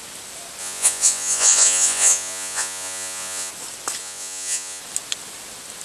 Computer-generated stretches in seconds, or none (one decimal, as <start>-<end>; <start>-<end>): 0.6-3.5; 4.0-4.8

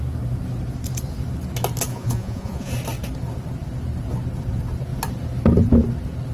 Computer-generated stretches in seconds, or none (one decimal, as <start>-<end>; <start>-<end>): 1.9-2.7